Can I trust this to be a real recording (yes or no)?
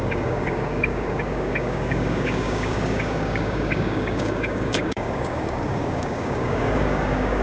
no